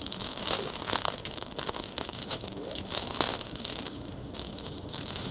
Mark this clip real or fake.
fake